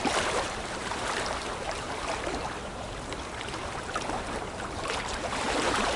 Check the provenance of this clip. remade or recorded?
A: remade